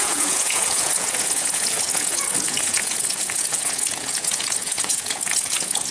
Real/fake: fake